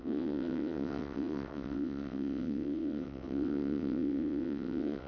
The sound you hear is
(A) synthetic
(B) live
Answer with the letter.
A